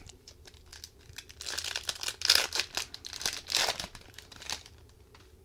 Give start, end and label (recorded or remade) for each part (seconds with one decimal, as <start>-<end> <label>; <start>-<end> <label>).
0.0-0.7 remade; 0.7-3.8 recorded; 3.8-5.4 remade